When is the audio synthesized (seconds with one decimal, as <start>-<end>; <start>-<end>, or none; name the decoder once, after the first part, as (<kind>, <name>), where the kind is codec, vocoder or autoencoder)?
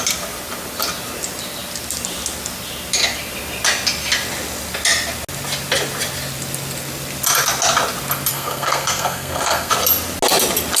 8.3-9.7 (codec, SNAC)